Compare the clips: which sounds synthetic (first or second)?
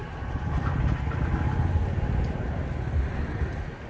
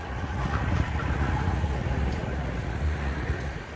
second